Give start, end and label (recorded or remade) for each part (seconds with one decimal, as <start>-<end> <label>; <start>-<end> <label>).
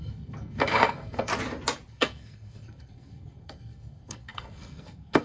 0.0-1.3 remade; 1.3-1.9 recorded; 1.9-5.2 remade